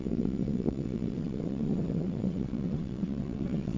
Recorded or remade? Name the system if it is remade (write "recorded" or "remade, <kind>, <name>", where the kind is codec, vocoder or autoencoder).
remade, vocoder, WaveNeXt